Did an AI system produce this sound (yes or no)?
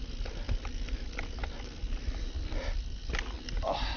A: no